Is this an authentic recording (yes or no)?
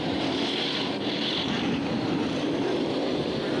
no